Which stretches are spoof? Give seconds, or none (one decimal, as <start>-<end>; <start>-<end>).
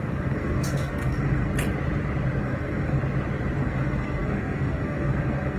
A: 0.0-1.5; 2.4-3.0; 3.6-5.6